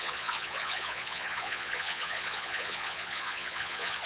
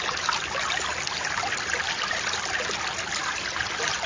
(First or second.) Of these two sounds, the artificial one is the first